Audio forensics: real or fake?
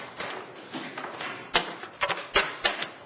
real